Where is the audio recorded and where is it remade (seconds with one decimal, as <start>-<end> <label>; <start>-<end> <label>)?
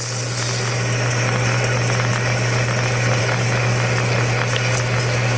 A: 0.0-5.4 recorded